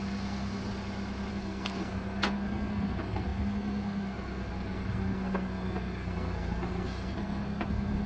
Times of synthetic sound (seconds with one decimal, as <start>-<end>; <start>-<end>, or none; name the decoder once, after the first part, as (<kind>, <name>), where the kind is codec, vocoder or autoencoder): 0.0-0.6 (codec, SNAC); 1.3-8.1